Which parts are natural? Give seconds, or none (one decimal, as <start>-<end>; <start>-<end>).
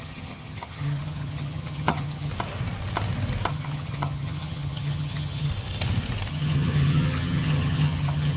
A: 2.3-3.5; 5.5-6.3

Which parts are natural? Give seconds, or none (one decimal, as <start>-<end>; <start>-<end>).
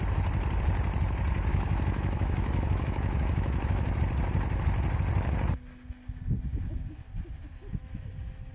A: 0.0-1.5; 4.0-7.7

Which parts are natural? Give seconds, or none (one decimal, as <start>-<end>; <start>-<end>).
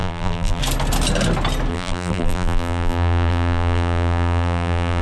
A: 0.6-1.7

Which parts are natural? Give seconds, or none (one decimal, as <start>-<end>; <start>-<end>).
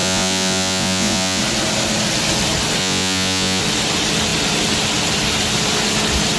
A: 1.4-2.8; 3.6-6.4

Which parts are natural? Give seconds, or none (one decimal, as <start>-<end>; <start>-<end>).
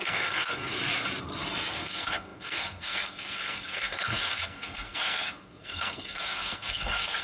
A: 0.7-1.7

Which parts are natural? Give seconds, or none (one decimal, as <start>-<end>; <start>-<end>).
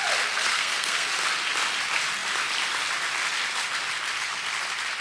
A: 0.0-0.5; 1.1-5.0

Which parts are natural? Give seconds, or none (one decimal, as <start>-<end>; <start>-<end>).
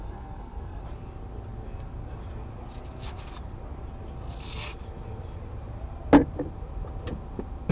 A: 0.8-7.7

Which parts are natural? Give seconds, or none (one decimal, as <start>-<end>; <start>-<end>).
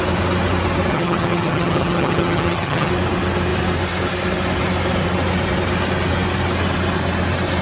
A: 0.0-0.9; 2.9-7.6